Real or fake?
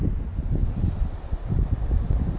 real